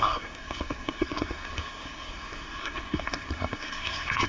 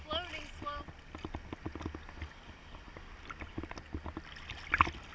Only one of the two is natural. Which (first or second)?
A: second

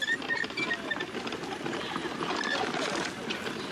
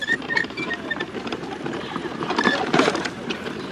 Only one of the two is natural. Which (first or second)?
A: first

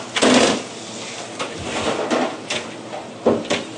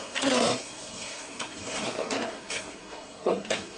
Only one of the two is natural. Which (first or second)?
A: first